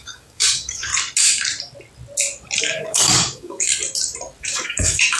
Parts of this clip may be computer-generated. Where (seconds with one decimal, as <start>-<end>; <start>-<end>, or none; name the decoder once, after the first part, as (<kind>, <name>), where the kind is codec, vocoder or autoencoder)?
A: 0.0-0.9 (codec, DAC); 2.6-3.7; 4.4-5.2

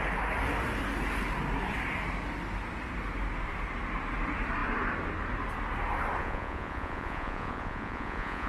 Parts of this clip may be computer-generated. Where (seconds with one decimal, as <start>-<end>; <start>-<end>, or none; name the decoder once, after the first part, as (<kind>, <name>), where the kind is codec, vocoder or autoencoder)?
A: 6.2-8.5 (vocoder, Vocos)

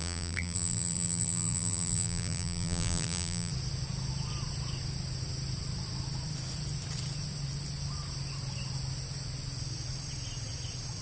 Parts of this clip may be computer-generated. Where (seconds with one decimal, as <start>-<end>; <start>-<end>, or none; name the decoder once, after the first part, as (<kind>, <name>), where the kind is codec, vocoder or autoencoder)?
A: 0.0-3.5 (vocoder, BigVGAN v2)